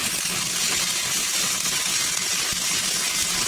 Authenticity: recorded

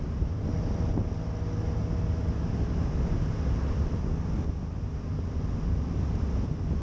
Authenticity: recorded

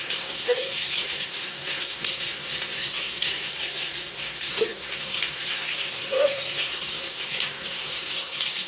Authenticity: remade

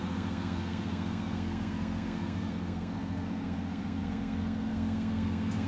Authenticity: remade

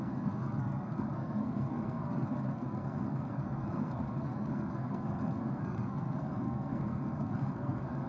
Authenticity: remade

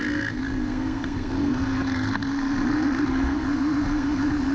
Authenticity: remade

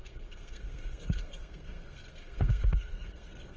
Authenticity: remade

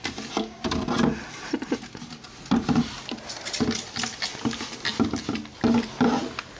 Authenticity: recorded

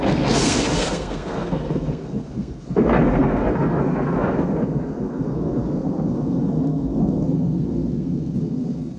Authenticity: remade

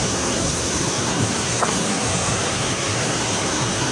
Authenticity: remade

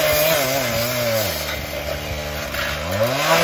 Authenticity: recorded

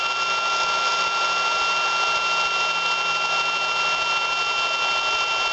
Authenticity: recorded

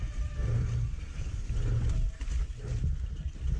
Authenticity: recorded